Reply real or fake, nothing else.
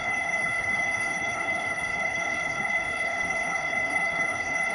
fake